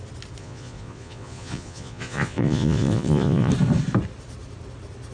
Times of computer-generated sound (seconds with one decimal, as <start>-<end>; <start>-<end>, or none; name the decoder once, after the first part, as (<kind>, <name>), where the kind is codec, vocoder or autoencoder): 0.4-3.5 (vocoder, Vocos)